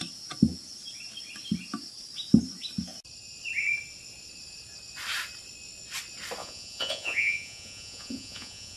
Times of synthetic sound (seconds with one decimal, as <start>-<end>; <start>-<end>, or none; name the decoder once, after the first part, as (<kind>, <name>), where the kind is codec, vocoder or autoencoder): 6.4-8.8 (vocoder, Vocos)